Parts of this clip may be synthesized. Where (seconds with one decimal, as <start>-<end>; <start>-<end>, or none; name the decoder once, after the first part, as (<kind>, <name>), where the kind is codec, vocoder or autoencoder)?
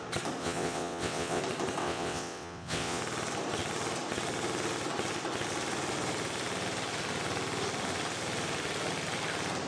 0.4-1.4 (vocoder, WaveNeXt); 1.8-3.0